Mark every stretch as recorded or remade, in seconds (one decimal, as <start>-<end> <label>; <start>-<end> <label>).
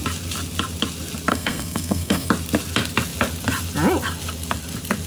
0.0-1.3 recorded; 1.3-2.3 remade; 2.3-5.1 recorded